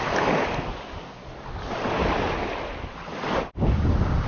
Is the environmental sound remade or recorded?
recorded